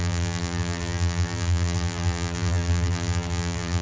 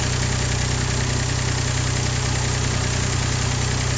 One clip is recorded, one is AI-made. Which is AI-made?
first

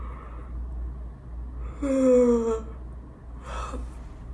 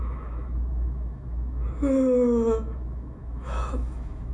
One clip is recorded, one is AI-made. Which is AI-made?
second